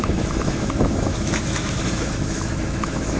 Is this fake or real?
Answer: fake